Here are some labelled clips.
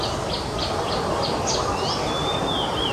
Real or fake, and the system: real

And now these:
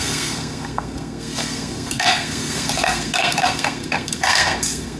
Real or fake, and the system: fake, codec, SNAC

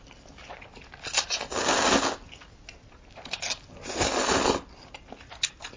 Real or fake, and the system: real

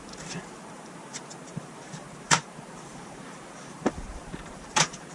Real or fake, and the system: fake, vocoder, BigVGAN v2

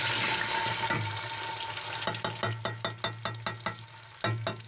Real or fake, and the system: real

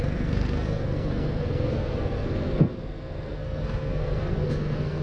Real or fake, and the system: fake, codec, SNAC